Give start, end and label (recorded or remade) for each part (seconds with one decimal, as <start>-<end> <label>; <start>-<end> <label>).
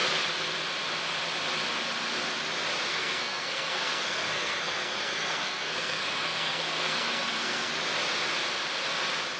0.0-2.9 recorded; 2.9-7.7 remade; 7.7-9.4 recorded